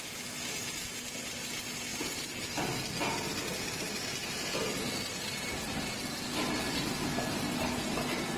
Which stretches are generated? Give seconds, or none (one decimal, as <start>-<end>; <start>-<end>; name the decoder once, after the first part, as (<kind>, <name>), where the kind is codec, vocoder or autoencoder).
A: none